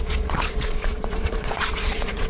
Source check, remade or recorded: remade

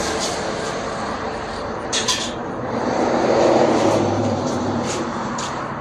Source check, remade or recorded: remade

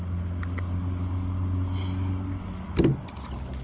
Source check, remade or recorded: recorded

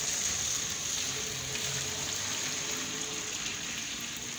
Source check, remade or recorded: recorded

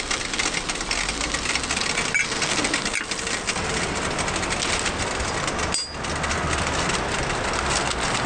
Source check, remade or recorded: recorded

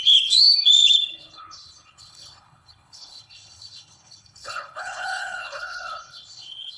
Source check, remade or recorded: remade